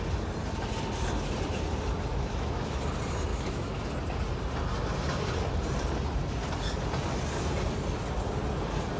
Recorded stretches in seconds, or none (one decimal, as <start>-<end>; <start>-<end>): 0.0-2.1; 2.8-3.3; 3.9-9.0